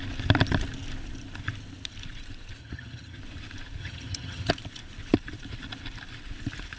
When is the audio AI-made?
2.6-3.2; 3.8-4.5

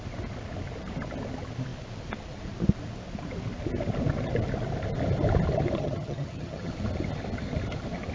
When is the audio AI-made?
5.8-6.7

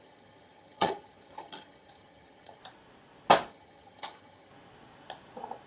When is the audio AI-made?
0.0-2.6; 3.5-4.5